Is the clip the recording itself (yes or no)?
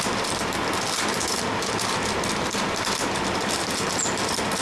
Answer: yes